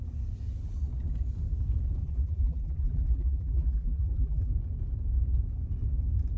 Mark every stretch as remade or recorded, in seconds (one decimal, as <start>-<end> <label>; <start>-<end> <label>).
0.0-2.0 recorded; 2.0-4.5 remade; 4.5-6.4 recorded